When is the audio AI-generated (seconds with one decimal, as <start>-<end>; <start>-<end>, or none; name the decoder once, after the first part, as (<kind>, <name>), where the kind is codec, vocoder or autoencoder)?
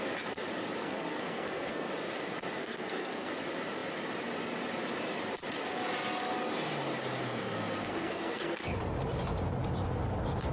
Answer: 0.8-1.9 (codec, SNAC); 2.6-3.3; 7.2-8.8